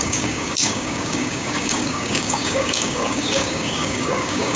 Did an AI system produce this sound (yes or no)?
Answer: yes